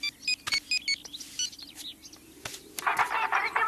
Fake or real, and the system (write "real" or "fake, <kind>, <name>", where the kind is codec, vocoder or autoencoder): real